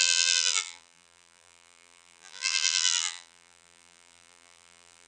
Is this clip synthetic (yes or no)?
yes